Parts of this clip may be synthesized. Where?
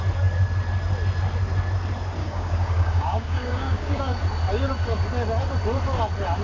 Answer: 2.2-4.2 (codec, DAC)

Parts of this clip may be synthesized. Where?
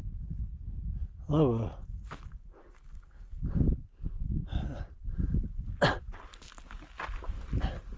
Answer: 2.6-3.4 (codec, DAC)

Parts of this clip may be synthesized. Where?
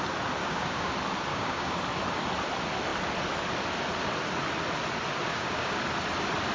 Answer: 0.4-0.9 (codec, DAC); 1.3-1.8; 5.3-5.8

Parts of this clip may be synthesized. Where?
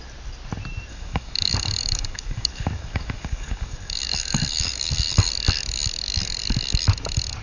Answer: 0.9-5.3 (codec, DAC)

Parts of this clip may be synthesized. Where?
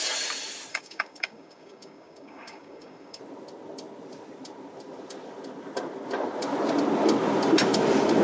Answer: 0.7-3.2 (codec, DAC)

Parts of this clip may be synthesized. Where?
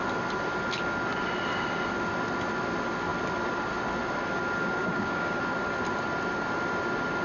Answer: 4.8-5.4 (codec, DAC)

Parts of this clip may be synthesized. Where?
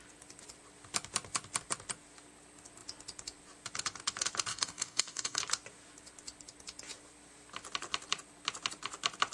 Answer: 4.5-5.4 (codec, DAC)